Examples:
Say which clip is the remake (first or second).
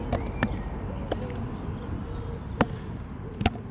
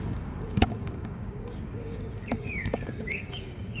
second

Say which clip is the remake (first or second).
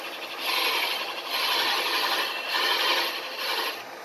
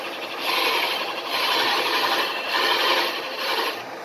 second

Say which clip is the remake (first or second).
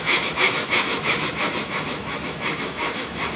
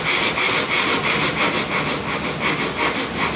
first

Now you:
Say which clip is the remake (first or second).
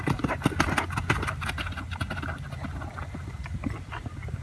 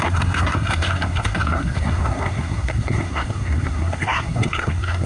second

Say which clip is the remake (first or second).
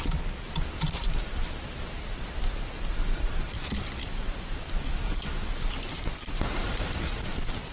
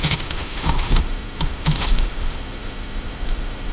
second